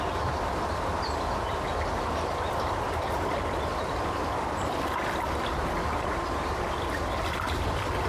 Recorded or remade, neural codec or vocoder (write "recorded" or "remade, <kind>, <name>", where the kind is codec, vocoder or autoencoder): recorded